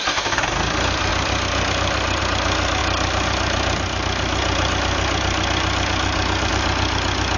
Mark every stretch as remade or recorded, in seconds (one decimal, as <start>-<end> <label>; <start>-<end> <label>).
0.0-1.1 recorded; 1.1-2.2 remade; 2.2-2.8 recorded; 2.8-6.5 remade; 6.5-7.4 recorded